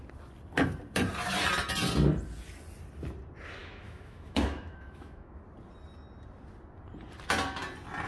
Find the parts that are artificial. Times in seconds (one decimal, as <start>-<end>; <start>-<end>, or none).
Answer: 3.6-5.4